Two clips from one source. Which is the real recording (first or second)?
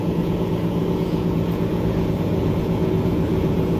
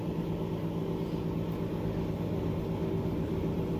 second